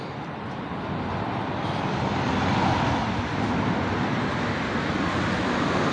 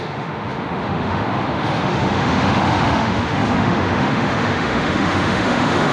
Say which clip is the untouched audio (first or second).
first